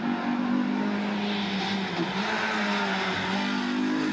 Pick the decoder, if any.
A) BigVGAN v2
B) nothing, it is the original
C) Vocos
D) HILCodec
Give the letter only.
B